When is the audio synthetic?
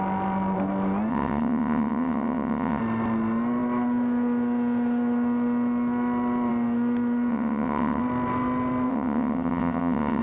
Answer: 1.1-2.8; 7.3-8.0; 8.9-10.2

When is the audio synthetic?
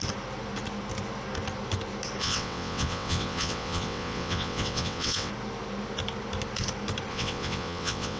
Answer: 2.2-5.3; 7.1-8.2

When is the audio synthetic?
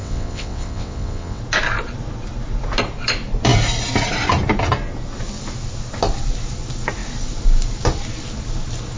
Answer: 0.0-1.4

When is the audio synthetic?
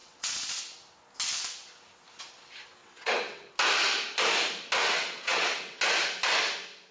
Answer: 0.0-0.5; 2.8-3.5; 4.8-5.8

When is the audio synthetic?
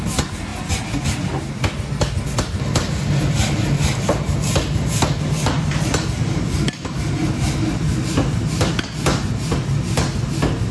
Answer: none